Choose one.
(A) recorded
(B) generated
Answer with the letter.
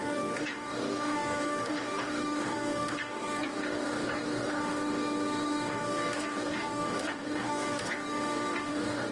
B